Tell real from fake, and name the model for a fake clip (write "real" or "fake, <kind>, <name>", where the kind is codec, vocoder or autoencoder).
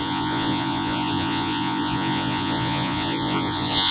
fake, vocoder, Vocos